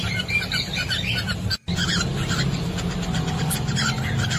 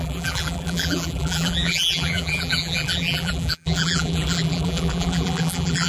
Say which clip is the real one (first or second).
first